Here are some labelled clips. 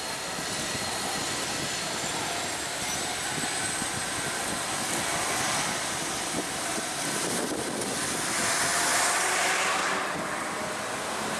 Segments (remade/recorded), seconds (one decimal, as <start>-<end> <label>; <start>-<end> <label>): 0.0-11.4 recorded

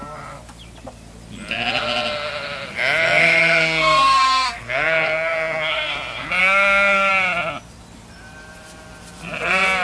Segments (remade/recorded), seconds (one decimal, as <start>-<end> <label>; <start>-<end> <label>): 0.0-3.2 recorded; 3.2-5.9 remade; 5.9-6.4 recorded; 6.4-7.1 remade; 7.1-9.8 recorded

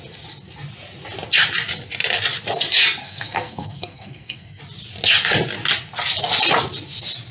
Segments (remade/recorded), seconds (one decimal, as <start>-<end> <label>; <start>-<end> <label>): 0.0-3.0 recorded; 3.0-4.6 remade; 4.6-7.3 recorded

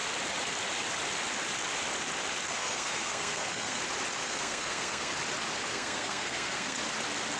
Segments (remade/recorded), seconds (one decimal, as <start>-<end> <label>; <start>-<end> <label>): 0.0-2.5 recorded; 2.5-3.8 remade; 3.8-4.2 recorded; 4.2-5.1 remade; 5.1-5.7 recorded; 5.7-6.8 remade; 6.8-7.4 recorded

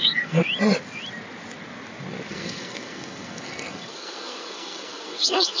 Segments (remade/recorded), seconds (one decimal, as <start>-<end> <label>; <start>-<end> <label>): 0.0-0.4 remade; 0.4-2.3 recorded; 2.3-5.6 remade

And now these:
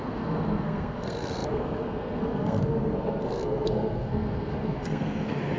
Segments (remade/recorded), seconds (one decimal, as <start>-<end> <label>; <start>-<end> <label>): 0.0-5.6 remade